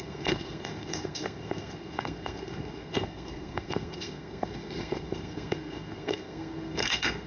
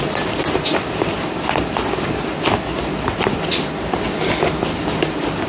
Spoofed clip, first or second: first